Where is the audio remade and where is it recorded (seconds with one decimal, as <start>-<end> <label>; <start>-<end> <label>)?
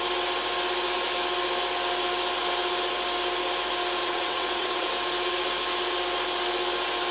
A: 0.0-4.0 recorded; 4.0-4.9 remade; 4.9-7.1 recorded